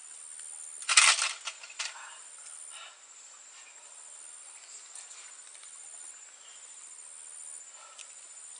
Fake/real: real